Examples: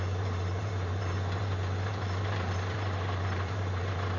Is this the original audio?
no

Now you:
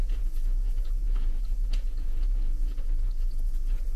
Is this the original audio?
no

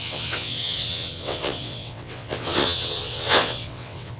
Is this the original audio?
no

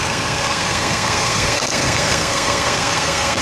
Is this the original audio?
no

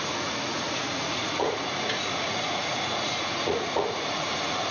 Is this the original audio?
no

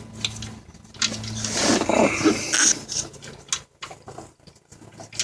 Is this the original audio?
yes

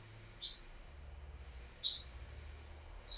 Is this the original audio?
yes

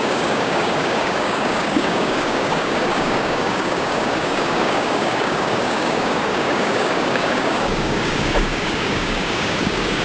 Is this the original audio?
no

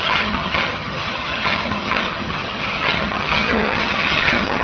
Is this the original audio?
no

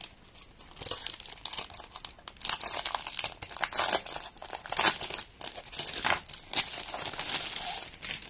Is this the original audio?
yes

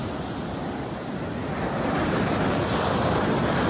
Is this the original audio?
yes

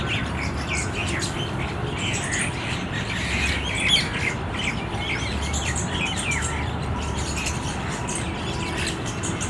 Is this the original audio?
yes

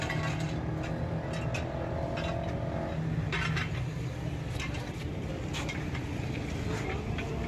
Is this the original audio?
yes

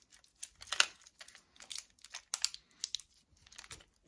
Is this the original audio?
yes